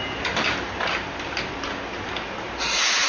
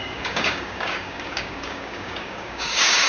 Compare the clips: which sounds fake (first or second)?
second